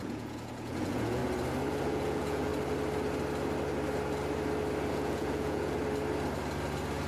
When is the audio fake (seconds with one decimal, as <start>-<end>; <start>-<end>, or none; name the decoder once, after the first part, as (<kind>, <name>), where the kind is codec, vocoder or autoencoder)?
0.0-1.2 (vocoder, Vocos); 1.8-2.5; 4.9-5.8